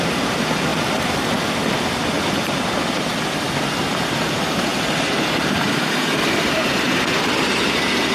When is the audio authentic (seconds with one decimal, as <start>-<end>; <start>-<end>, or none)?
0.7-2.5; 3.1-3.9